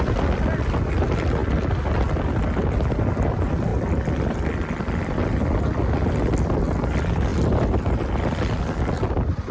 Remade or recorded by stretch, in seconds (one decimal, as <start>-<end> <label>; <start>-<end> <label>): 0.0-3.7 recorded; 3.7-5.6 remade; 5.6-9.5 recorded